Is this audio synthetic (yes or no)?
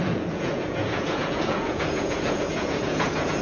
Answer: yes